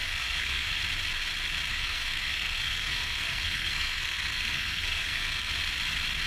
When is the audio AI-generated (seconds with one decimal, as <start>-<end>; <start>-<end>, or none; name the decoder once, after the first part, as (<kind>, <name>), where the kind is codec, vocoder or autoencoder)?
0.0-0.8 (codec, SNAC); 1.7-5.5